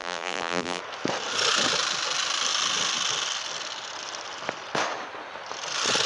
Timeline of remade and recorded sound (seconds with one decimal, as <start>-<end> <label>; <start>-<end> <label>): 0.0-0.8 remade; 0.8-6.1 recorded